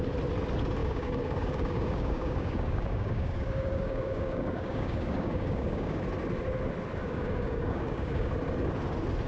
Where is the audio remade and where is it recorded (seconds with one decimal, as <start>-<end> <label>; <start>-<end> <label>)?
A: 0.0-0.8 recorded; 0.8-6.0 remade; 6.0-7.0 recorded; 7.0-8.3 remade; 8.3-9.3 recorded